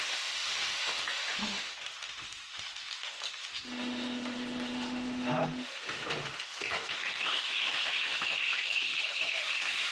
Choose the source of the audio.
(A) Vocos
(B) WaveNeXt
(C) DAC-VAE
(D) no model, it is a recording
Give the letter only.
C